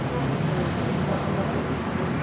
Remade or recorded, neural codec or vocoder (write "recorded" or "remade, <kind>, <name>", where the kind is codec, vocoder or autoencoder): recorded